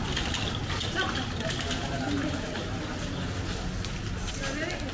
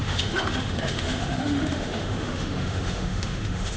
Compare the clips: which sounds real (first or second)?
first